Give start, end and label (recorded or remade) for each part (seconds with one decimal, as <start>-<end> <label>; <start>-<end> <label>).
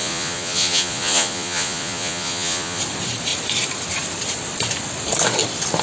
0.0-2.8 remade; 2.8-5.8 recorded